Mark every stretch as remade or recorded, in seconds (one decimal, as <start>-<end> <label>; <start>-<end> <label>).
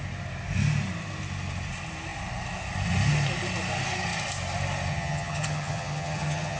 0.0-4.9 recorded; 4.9-6.6 remade